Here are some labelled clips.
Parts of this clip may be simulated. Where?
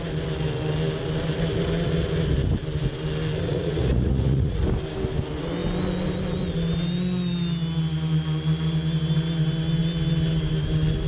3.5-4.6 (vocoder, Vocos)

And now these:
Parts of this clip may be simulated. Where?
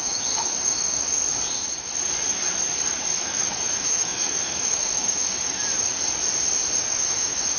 0.0-1.3 (autoencoder, DAC-VAE); 3.2-5.6; 6.9-7.6